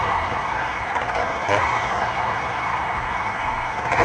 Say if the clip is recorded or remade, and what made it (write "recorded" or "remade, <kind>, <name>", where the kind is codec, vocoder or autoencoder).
remade, codec, SNAC